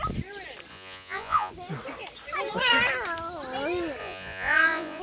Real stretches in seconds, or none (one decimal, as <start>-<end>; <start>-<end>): 0.0-0.7; 1.5-4.0